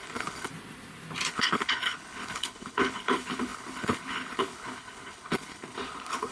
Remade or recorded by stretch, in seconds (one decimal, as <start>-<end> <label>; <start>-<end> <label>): 0.0-0.5 remade; 0.5-1.3 recorded; 1.3-6.3 remade